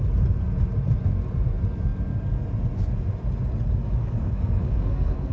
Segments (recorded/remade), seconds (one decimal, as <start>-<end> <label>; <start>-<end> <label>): 0.0-4.0 recorded; 4.0-5.3 remade